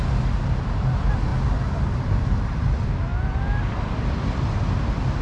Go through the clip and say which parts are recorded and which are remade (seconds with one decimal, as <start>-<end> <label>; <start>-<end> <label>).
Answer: 0.0-5.2 recorded